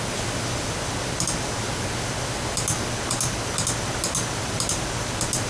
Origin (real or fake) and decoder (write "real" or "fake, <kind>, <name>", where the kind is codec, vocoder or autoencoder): real